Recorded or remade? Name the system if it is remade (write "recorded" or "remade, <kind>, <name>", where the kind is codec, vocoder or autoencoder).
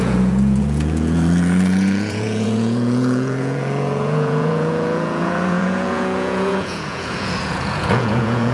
remade, vocoder, Vocos